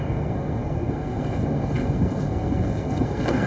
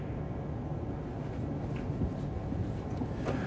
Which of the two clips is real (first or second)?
second